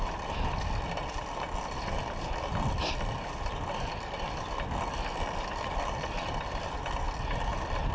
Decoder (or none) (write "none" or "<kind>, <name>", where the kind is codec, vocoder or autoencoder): none